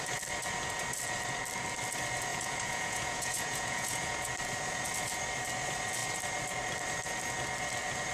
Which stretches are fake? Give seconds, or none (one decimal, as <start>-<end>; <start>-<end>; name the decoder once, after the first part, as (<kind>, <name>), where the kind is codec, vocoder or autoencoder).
2.3-4.3 (vocoder, Vocos)